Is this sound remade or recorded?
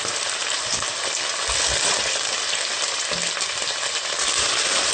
recorded